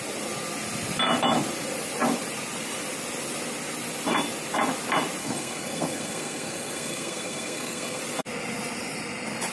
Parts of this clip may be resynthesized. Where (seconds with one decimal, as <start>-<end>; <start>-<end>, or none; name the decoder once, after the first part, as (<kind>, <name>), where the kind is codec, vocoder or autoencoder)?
5.2-8.0 (codec, SNAC)